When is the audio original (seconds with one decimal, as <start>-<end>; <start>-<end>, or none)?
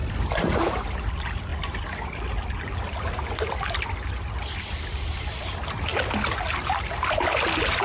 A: 0.0-7.8